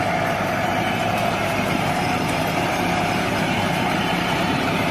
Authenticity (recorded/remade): remade